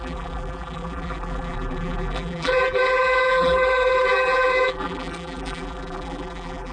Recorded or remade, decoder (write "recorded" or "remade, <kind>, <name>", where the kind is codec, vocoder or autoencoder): remade, vocoder, BigVGAN v2